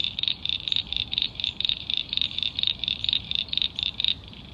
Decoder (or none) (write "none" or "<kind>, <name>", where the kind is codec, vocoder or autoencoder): vocoder, BigVGAN v2